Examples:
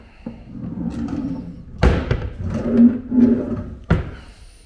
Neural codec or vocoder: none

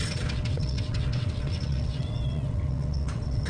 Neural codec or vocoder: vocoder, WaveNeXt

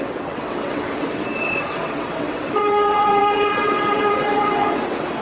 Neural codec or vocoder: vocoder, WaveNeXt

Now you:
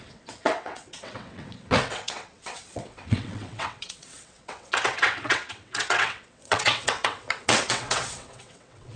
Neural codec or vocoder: vocoder, WaveNeXt